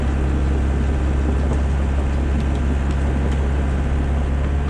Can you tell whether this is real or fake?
real